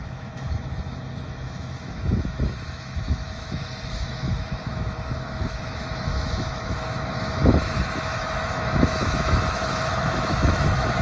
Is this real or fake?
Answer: fake